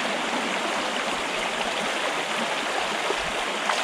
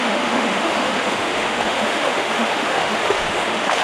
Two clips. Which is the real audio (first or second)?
first